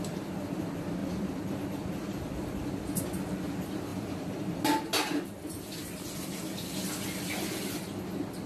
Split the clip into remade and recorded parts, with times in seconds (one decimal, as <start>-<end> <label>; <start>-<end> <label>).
0.0-1.0 recorded; 1.0-3.0 remade; 3.0-3.9 recorded; 3.9-4.6 remade; 4.6-8.5 recorded